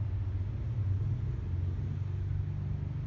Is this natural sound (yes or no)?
yes